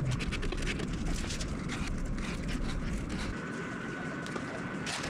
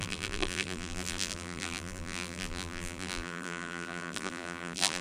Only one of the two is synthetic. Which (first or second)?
second